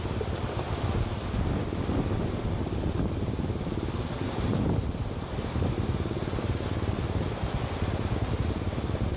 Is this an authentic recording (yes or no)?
yes